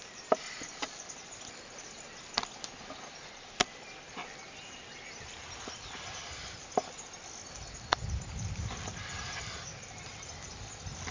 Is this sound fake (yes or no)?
no